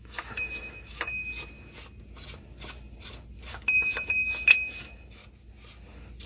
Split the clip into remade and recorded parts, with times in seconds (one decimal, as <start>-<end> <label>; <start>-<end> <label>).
0.0-1.2 remade; 1.2-3.5 recorded; 3.5-5.2 remade; 5.2-6.3 recorded